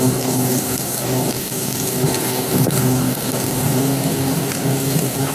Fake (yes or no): yes